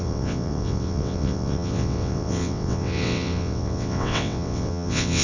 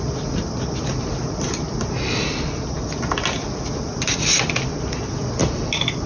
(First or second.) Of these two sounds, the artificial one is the first